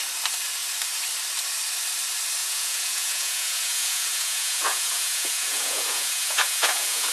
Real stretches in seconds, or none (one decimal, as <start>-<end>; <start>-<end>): 0.0-2.4

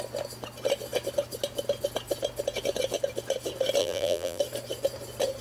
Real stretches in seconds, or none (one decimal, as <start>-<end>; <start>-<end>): 0.0-3.8; 4.4-5.4

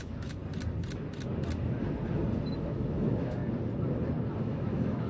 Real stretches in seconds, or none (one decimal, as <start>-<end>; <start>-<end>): 0.4-2.6; 3.4-4.4

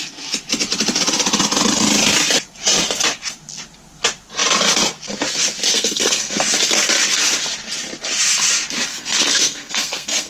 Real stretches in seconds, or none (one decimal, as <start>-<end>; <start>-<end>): 0.0-5.7; 6.4-8.9

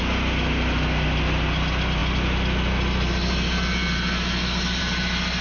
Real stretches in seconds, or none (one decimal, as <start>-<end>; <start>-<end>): 0.0-5.4

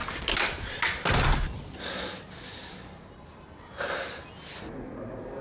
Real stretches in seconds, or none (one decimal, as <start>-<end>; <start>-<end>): 0.0-5.4